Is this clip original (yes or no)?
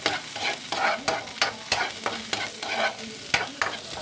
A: yes